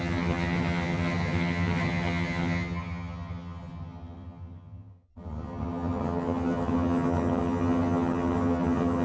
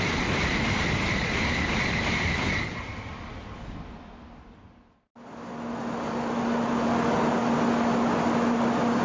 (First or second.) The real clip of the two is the second